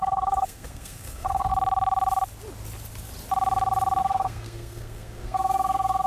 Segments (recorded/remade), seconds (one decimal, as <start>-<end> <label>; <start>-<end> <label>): 0.0-1.5 remade; 1.5-4.0 recorded; 4.0-6.1 remade